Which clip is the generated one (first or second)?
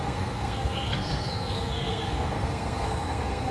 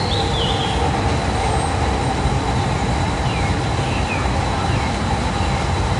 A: first